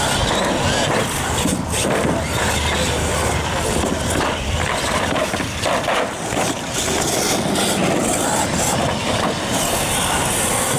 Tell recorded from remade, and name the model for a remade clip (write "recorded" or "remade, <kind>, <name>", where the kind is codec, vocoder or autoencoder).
recorded